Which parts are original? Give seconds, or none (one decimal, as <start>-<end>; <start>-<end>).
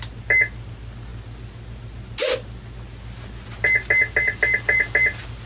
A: 0.0-5.5